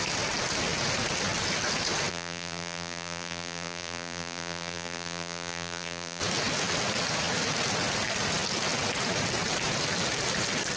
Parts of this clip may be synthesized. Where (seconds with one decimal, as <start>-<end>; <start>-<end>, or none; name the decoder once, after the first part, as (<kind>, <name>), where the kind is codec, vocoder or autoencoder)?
2.1-6.2 (vocoder, BigVGAN v2)